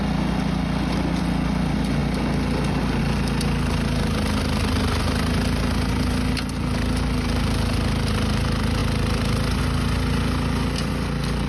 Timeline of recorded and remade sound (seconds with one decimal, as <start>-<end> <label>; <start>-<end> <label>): 0.0-11.5 recorded